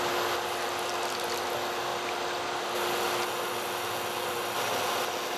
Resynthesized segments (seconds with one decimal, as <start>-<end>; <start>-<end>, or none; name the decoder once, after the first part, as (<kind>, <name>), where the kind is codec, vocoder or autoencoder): none